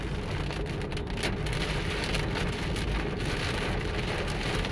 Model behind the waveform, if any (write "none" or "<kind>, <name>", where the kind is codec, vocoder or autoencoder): none